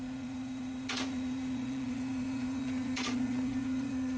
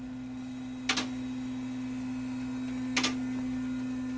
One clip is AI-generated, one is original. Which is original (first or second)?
second